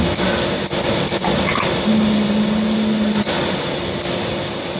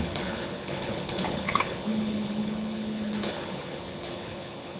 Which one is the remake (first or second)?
second